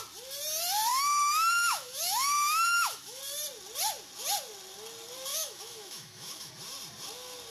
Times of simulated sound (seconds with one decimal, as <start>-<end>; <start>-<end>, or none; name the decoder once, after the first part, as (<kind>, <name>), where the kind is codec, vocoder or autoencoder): 0.9-3.2 (autoencoder, DAC-VAE); 5.3-6.5